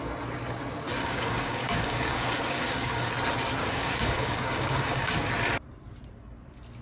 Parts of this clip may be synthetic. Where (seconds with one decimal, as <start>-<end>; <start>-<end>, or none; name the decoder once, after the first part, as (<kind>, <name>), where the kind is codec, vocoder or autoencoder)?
1.0-3.1 (codec, DAC); 3.6-5.1